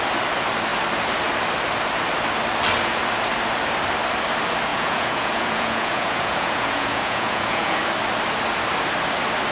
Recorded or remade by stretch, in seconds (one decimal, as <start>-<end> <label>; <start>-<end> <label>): 0.0-4.7 recorded; 4.7-7.8 remade; 7.8-9.5 recorded